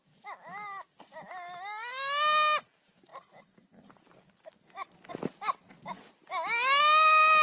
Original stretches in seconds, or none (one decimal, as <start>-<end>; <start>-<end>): 0.0-7.4